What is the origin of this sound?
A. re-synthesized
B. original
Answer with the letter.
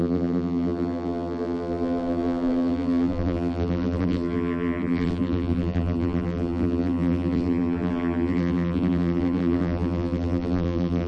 A